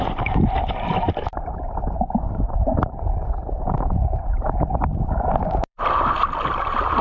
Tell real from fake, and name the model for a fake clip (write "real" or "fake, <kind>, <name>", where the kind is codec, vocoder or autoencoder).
fake, vocoder, BigVGAN v2